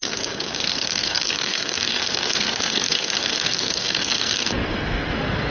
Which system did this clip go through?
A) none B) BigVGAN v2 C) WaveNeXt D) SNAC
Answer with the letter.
D